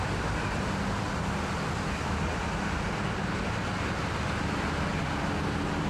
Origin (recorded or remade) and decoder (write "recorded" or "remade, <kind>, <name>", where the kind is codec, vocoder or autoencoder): recorded